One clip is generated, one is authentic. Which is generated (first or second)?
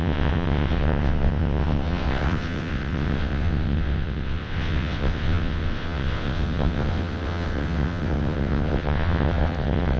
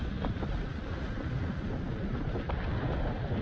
first